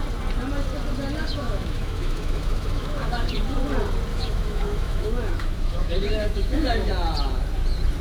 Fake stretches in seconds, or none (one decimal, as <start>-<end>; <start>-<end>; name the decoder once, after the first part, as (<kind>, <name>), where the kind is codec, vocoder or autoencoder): 1.2-3.4 (autoencoder, DAC-VAE); 4.1-6.9